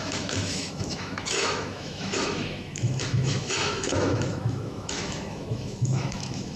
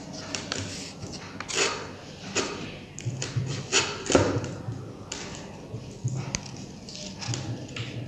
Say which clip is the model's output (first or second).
first